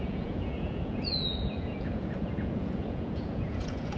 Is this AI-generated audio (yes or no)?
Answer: yes